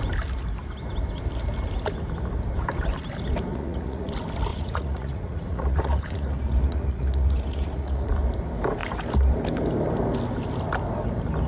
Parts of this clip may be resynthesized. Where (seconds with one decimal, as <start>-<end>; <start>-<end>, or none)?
3.5-4.1; 4.5-8.1